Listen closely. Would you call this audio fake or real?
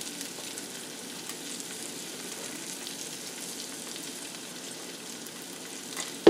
real